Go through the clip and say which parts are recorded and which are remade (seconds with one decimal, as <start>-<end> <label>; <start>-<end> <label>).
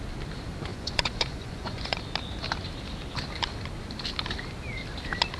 0.0-0.7 recorded; 0.7-2.0 remade; 2.0-5.4 recorded